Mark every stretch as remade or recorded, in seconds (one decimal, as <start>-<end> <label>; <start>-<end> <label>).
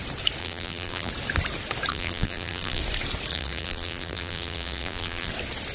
0.0-0.4 recorded; 0.4-1.1 remade; 1.1-1.9 recorded; 1.9-2.8 remade; 2.8-3.3 recorded; 3.3-5.3 remade; 5.3-5.7 recorded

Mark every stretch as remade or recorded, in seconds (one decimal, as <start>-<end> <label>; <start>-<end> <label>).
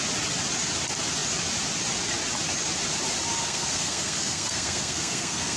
0.0-3.4 recorded; 3.4-5.6 remade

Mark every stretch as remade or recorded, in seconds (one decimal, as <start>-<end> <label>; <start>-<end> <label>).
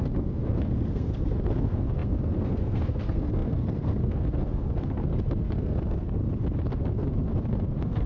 0.0-6.2 remade; 6.2-6.7 recorded; 6.7-8.1 remade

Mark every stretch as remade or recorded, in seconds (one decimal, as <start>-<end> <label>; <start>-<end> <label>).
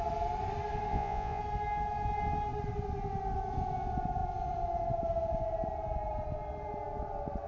0.0-0.9 recorded; 0.9-1.4 remade; 1.4-7.5 recorded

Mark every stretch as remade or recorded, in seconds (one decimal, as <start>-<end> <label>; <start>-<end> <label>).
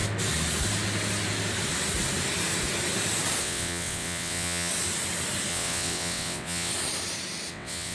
0.0-3.4 recorded; 3.4-4.7 remade; 4.7-5.5 recorded; 5.5-6.7 remade; 6.7-7.5 recorded; 7.5-7.9 remade